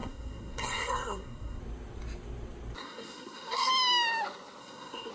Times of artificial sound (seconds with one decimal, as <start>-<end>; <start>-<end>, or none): 0.0-1.6; 2.8-3.7; 4.6-5.1